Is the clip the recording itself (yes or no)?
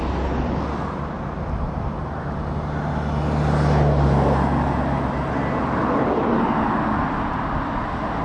yes